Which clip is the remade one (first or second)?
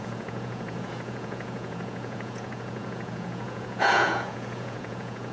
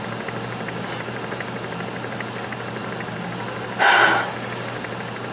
first